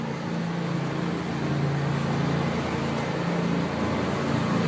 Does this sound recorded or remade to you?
recorded